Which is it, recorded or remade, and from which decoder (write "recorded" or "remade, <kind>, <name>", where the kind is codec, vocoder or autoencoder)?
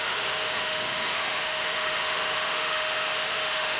remade, autoencoder, DAC-VAE